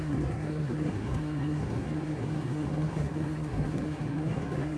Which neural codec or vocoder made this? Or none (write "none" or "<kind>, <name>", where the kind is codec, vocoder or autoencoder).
codec, SNAC